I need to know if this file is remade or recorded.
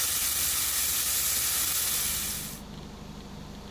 recorded